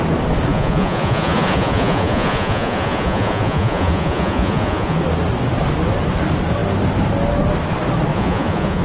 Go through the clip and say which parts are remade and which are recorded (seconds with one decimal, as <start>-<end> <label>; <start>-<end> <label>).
0.0-0.5 recorded; 0.5-5.0 remade; 5.0-8.1 recorded; 8.1-8.8 remade